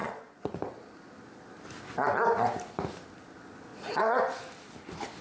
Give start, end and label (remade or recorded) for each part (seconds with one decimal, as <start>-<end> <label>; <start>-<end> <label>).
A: 0.0-0.5 remade; 0.5-3.7 recorded; 3.7-4.2 remade; 4.2-5.2 recorded